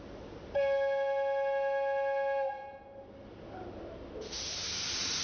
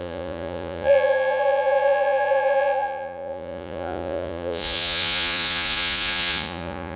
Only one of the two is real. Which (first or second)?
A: first